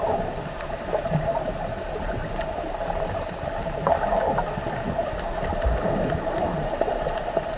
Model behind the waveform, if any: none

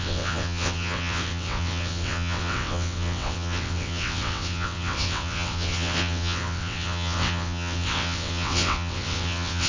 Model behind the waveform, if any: vocoder, WaveNeXt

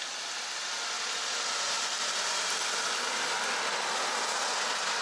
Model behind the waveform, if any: none